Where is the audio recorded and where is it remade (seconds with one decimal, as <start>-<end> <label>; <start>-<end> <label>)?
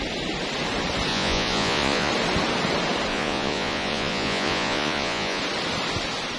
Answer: 0.0-1.1 recorded; 1.1-2.1 remade; 2.1-3.1 recorded; 3.1-5.4 remade; 5.4-6.4 recorded